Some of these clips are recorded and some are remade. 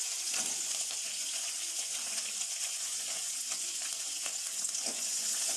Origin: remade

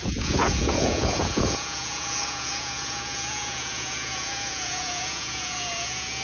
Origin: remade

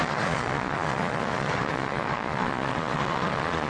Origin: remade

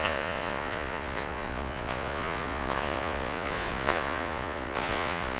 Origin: remade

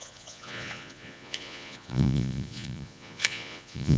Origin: remade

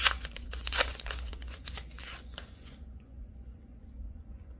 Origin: remade